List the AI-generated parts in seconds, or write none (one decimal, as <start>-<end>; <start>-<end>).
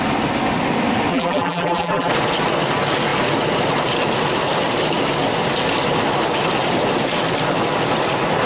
1.1-2.1